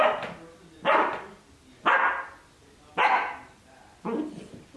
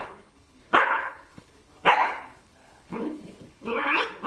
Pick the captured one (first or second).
first